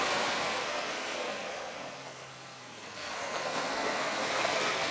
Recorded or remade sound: remade